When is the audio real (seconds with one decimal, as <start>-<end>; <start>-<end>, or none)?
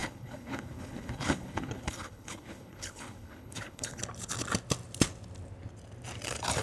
4.0-6.6